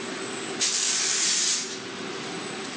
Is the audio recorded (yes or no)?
yes